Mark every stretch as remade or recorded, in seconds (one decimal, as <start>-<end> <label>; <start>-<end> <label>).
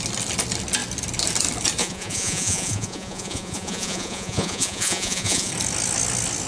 0.0-1.8 recorded; 1.8-5.5 remade; 5.5-6.5 recorded